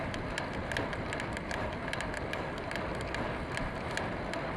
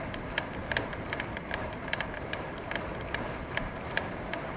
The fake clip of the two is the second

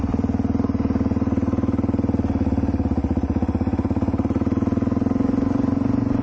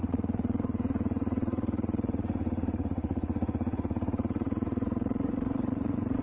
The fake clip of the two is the second